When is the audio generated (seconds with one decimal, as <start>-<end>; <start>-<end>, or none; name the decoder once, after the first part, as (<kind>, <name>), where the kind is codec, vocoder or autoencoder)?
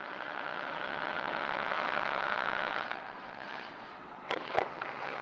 0.0-5.2 (vocoder, WaveNeXt)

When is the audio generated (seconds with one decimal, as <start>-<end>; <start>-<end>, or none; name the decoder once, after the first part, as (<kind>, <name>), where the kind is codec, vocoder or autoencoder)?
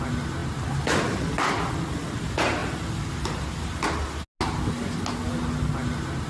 none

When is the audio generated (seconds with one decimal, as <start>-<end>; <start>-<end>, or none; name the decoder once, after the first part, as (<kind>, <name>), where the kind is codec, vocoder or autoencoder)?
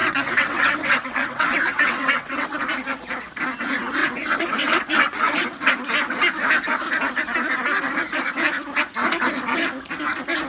0.0-2.6 (vocoder, WaveNeXt); 4.0-5.7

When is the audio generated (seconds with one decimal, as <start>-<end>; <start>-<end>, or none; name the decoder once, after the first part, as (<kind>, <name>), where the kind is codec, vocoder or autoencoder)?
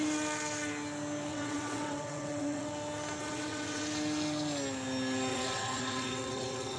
1.3-2.7 (vocoder, WaveNeXt); 3.2-3.8; 5.3-6.8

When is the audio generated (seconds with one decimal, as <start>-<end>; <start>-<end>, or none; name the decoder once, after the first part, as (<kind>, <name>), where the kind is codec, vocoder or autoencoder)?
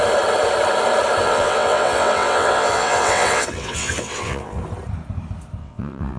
1.2-4.6 (vocoder, WaveNeXt); 5.6-6.2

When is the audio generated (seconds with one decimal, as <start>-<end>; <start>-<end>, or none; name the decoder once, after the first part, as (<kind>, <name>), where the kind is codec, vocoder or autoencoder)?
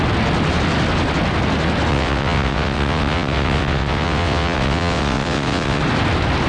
1.9-5.8 (vocoder, WaveNeXt)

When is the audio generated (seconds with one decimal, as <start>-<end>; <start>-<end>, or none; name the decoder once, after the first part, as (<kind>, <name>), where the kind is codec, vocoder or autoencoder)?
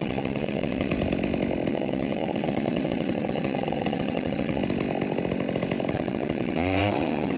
0.0-0.9 (vocoder, WaveNeXt); 1.7-4.6; 5.9-7.4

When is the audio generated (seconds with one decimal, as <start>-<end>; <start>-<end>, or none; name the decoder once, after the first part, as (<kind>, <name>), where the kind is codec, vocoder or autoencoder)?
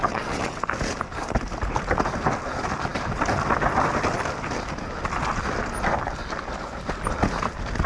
0.0-0.6 (vocoder, WaveNeXt)